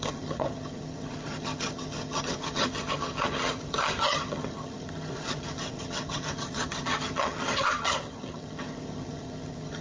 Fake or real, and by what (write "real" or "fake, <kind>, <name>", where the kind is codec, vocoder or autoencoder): fake, vocoder, HiFi-GAN